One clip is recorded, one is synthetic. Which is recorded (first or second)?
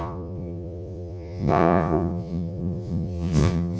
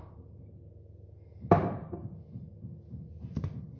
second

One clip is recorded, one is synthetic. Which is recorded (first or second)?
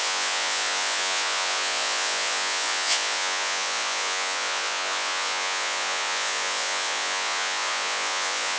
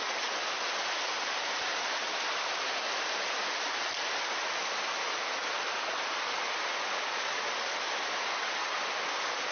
second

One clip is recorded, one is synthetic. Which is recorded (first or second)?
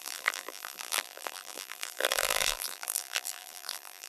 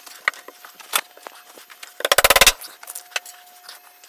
second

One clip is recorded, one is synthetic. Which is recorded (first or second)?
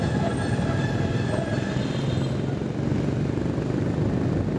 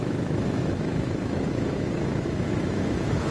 first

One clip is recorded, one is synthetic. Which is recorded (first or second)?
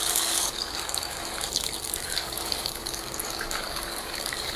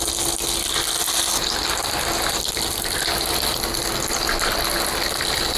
second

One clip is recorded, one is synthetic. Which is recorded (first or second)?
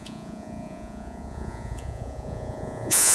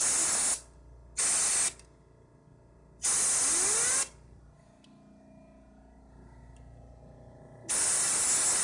second